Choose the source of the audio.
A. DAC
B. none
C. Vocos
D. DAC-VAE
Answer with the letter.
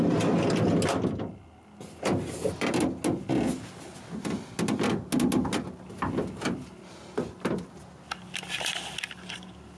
B